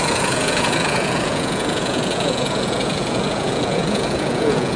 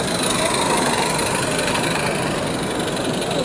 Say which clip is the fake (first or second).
first